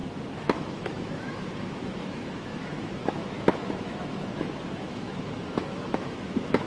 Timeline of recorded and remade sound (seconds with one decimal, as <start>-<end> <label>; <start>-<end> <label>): 0.0-6.7 remade